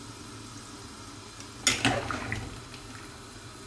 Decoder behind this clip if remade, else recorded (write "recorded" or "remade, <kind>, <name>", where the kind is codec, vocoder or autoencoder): recorded